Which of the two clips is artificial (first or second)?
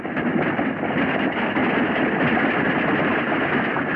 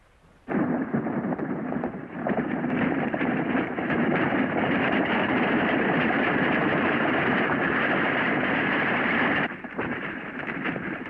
second